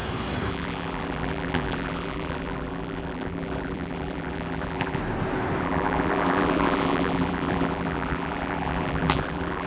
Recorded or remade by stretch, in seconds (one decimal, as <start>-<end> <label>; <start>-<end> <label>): 0.0-0.5 recorded; 0.5-5.0 remade; 5.0-5.6 recorded; 5.6-9.7 remade